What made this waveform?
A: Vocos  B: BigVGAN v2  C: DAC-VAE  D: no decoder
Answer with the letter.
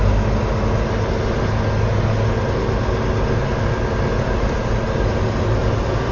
D